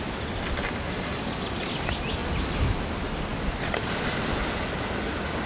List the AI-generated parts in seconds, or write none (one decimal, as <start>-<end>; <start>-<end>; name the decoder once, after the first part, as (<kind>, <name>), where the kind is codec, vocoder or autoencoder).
none